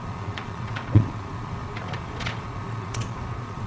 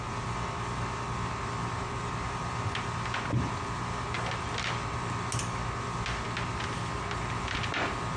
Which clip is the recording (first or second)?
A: second